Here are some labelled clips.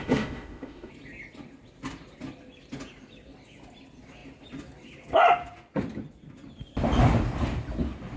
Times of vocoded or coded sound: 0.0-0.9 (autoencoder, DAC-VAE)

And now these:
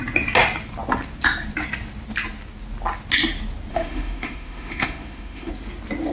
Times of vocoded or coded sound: 3.7-5.5 (autoencoder, DAC-VAE)

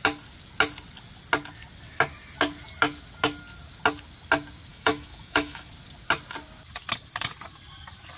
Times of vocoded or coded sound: 4.7-5.7 (autoencoder, DAC-VAE)

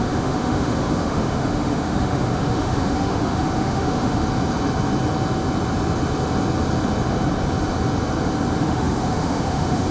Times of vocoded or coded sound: 0.0-4.2 (autoencoder, DAC-VAE); 8.6-9.9

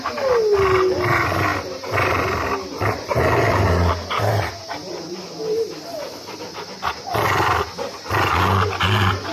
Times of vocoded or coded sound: none